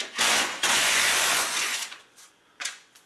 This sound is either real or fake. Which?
fake